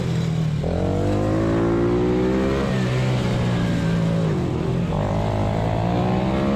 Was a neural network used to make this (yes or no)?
no